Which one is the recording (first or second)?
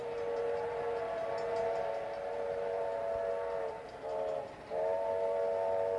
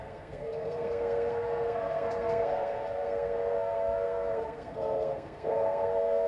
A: first